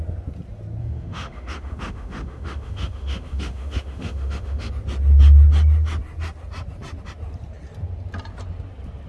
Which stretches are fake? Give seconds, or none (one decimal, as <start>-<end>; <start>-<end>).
0.8-4.7